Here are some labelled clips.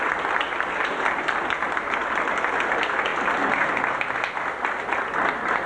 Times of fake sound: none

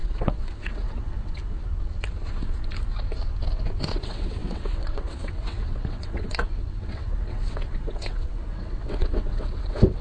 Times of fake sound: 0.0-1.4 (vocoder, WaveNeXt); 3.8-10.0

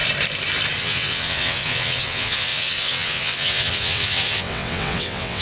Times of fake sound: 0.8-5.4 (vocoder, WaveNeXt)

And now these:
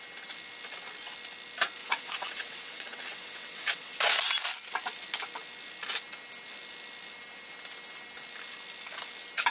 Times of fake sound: 1.8-4.0 (vocoder, WaveNeXt)

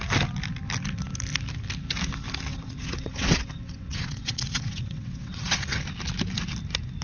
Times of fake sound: 2.5-5.8 (vocoder, WaveNeXt)

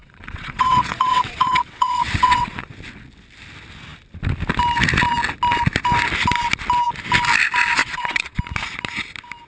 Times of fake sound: 0.0-2.7 (vocoder, WaveNeXt); 7.8-8.4